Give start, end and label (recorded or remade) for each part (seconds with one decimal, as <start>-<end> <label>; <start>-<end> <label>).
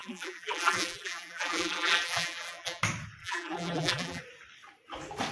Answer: 0.0-2.8 remade; 2.8-3.2 recorded; 3.2-4.2 remade; 4.2-5.3 recorded